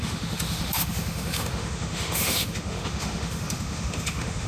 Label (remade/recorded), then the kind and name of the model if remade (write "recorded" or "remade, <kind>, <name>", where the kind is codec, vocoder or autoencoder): remade, autoencoder, DAC-VAE